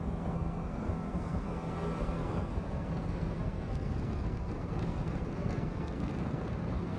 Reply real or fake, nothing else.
fake